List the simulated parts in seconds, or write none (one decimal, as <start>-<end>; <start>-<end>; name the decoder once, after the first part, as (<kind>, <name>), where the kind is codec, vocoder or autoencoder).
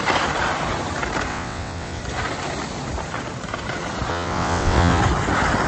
1.3-2.0 (vocoder, WaveNeXt); 4.1-5.0